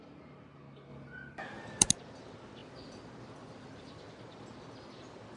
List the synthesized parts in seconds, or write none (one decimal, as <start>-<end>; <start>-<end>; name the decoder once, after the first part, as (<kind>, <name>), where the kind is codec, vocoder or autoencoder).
0.9-1.9 (vocoder, BigVGAN v2); 2.6-4.3